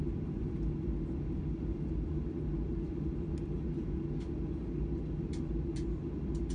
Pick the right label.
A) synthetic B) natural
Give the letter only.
B